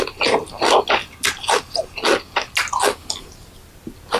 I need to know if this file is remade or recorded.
recorded